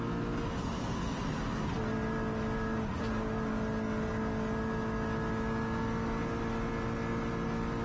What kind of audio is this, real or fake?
real